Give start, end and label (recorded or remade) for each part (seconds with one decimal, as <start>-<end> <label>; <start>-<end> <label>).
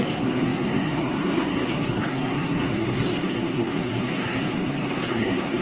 0.0-5.6 remade